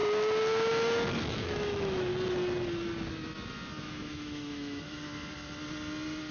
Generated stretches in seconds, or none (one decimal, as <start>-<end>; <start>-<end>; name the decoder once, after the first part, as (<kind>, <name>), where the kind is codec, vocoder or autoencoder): 1.2-2.1 (autoencoder, DAC-VAE); 3.8-5.1